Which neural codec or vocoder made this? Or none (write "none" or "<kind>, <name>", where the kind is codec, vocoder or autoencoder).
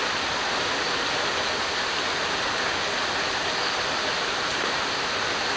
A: none